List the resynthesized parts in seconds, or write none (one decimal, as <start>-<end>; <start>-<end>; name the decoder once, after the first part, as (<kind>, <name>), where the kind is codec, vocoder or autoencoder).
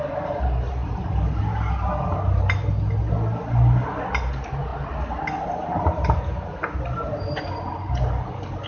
0.8-1.4 (vocoder, BigVGAN v2); 4.7-5.5